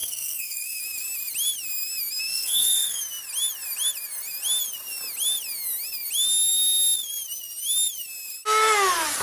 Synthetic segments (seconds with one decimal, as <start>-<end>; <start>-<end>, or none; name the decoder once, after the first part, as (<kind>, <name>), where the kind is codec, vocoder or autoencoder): 0.0-0.8 (codec, SNAC); 2.3-3.0